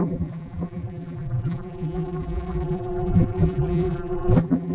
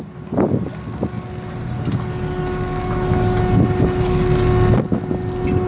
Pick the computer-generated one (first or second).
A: first